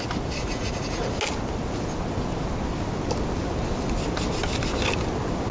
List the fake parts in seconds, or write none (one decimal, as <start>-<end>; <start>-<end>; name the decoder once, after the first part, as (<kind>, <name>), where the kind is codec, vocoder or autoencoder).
0.4-1.1 (vocoder, Vocos)